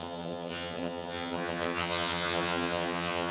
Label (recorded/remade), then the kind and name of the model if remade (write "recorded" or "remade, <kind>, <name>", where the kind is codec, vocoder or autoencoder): remade, vocoder, HiFi-GAN